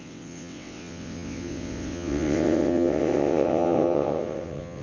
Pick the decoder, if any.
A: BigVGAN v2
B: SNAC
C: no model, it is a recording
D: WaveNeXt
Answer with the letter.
D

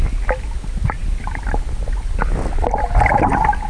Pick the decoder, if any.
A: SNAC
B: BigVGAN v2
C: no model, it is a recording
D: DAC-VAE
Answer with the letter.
C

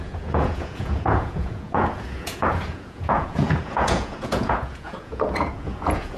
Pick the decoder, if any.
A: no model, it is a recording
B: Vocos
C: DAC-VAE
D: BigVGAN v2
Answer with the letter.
B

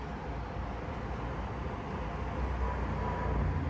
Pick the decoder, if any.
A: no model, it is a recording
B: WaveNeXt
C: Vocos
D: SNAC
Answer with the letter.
A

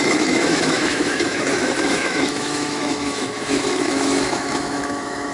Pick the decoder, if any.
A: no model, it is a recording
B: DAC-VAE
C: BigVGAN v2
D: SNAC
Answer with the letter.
B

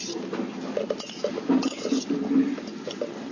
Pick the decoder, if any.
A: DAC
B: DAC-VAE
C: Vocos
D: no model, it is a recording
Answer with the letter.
D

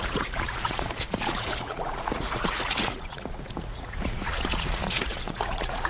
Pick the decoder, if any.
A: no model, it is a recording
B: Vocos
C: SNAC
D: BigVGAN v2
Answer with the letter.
B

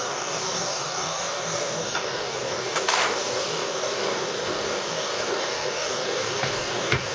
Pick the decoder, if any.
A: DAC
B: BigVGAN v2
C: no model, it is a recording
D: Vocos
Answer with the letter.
A